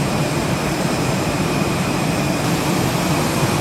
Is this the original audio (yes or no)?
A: no